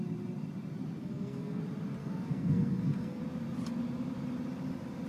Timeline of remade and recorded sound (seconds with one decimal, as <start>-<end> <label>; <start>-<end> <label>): 0.0-1.0 recorded; 1.0-1.6 remade; 1.6-2.0 recorded; 2.0-3.2 remade; 3.2-5.1 recorded